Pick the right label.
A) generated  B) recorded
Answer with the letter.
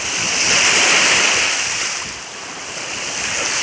B